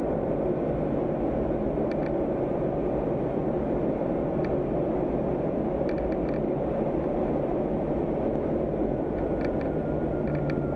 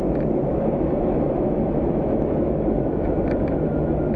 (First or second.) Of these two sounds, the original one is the first